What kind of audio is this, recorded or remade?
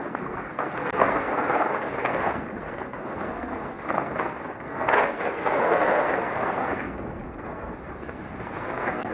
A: remade